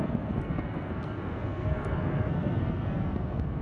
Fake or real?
fake